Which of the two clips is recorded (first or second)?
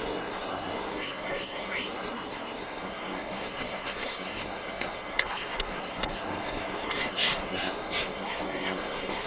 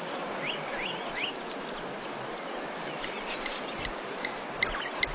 second